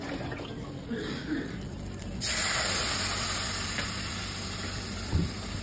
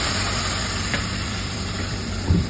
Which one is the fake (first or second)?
second